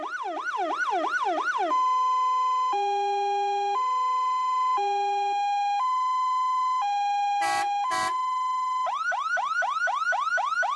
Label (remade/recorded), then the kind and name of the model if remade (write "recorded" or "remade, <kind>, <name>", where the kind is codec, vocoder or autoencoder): recorded